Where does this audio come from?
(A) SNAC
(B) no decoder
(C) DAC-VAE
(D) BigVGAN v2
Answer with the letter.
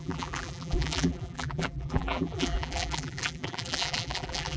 D